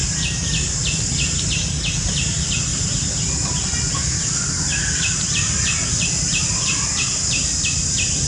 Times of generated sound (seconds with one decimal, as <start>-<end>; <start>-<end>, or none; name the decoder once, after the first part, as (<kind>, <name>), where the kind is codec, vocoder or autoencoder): none